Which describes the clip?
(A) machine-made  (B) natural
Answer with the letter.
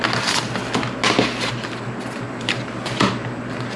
B